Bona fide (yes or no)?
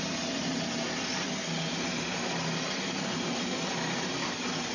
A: yes